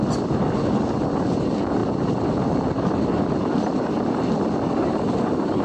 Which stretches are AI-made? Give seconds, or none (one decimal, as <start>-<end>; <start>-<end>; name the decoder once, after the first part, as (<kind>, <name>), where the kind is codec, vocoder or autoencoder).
none